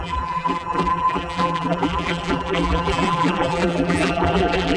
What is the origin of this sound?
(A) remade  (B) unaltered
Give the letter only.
A